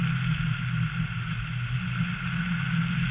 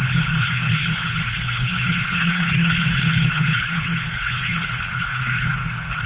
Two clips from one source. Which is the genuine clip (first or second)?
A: first